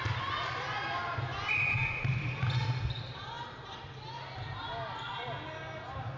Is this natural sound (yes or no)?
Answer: yes